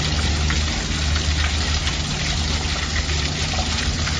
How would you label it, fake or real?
real